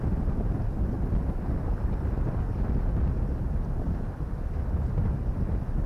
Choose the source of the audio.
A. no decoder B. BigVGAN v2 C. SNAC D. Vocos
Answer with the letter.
A